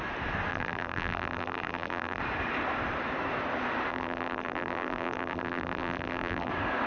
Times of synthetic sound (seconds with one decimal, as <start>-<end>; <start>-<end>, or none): 0.5-2.2; 3.9-6.5